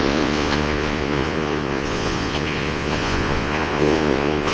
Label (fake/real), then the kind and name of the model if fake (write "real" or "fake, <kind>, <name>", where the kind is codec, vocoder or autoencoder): fake, vocoder, Vocos